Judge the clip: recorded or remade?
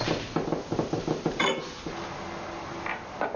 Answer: recorded